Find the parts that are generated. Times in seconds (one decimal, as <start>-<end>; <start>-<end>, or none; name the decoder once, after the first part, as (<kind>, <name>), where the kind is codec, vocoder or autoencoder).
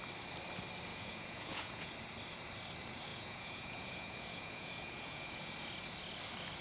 0.9-1.9 (vocoder, Vocos); 3.1-5.5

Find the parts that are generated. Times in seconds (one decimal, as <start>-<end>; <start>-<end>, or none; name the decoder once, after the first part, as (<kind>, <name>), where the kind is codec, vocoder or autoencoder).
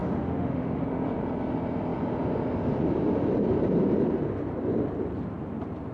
0.0-0.8 (autoencoder, DAC-VAE)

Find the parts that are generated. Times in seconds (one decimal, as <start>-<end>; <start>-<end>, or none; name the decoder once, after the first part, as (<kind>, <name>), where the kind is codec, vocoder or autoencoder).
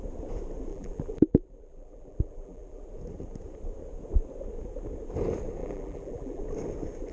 0.7-2.8 (vocoder, BigVGAN v2); 5.6-6.4